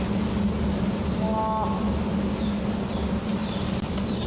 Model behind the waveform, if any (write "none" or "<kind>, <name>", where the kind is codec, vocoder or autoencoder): none